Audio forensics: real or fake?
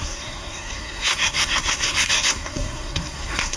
fake